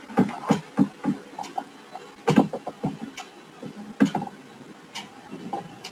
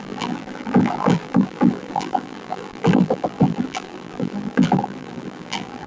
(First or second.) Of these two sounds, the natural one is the first